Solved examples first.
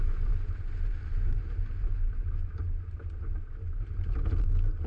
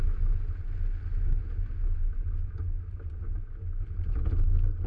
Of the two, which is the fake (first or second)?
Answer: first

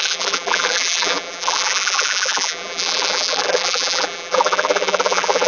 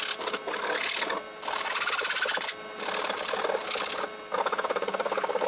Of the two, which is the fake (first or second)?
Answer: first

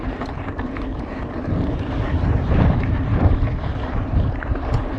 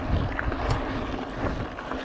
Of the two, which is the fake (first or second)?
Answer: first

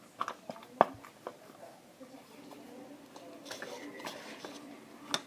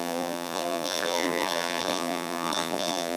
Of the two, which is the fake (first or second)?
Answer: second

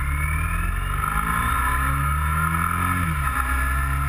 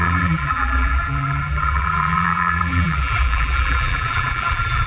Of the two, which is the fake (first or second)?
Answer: second